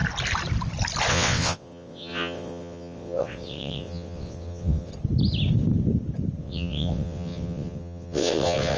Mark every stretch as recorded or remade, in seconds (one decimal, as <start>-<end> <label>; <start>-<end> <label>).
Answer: 0.0-1.1 recorded; 1.1-4.9 remade; 4.9-6.4 recorded; 6.4-8.8 remade

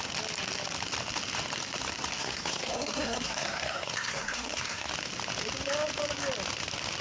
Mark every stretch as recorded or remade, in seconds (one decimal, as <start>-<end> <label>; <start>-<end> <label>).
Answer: 0.0-2.2 recorded; 2.2-4.9 remade; 4.9-7.0 recorded